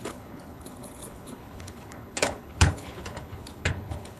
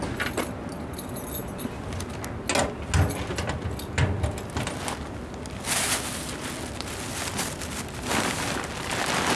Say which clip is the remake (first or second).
first